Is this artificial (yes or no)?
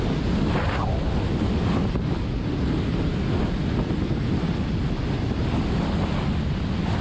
no